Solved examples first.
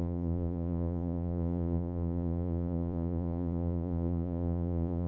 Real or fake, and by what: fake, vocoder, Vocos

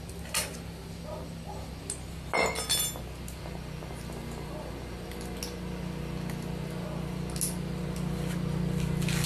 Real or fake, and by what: real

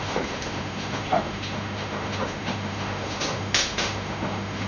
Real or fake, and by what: fake, autoencoder, DAC-VAE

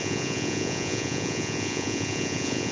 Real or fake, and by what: fake, vocoder, Vocos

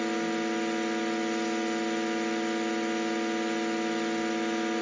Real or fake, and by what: real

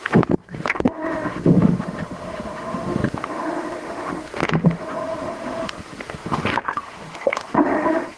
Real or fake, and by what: fake, autoencoder, DAC-VAE